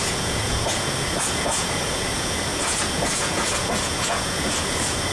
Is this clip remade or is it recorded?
remade